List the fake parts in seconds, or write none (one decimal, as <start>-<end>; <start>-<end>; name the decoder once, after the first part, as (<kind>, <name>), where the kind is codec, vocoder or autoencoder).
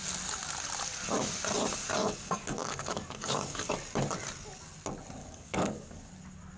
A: 2.0-3.7 (codec, DAC); 5.2-6.1